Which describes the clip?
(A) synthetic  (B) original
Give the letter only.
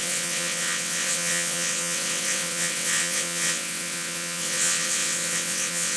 A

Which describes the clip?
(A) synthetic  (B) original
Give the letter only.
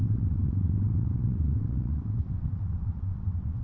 A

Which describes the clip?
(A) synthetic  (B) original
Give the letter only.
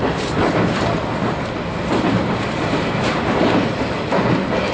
B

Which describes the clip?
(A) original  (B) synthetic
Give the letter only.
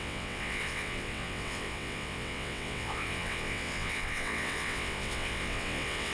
B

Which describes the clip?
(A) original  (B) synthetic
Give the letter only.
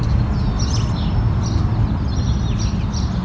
A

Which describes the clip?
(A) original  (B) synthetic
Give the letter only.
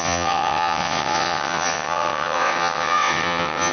B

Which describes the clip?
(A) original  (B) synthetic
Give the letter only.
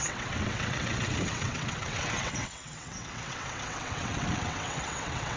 B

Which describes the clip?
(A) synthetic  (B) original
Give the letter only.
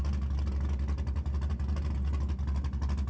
B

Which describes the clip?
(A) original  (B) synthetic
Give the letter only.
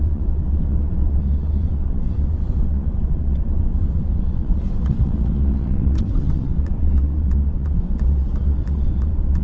B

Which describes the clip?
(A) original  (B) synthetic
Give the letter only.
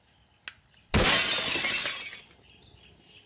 A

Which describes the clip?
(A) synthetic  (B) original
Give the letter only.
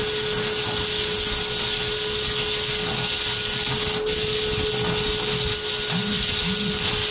B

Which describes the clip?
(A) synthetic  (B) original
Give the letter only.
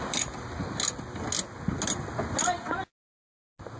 B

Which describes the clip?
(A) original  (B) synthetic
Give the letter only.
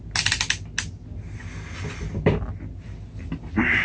A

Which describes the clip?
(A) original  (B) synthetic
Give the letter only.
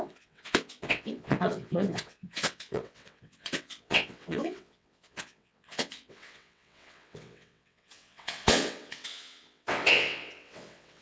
B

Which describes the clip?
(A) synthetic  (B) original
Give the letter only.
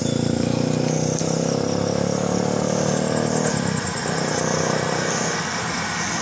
B